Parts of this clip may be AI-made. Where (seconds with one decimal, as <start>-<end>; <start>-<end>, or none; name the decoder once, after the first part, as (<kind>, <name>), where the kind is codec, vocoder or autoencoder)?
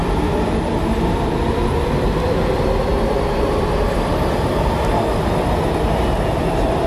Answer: 0.0-6.9 (vocoder, BigVGAN v2)